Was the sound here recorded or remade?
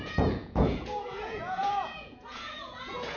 remade